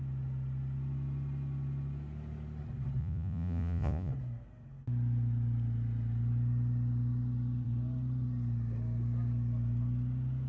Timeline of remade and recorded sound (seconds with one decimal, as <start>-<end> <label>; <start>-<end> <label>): 0.0-3.0 recorded; 3.0-4.1 remade; 4.1-10.5 recorded